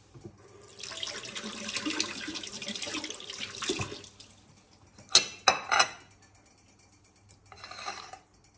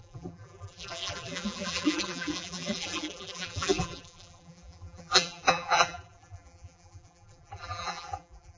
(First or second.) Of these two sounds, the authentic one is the first